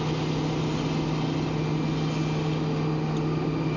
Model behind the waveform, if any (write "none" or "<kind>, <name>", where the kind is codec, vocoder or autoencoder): none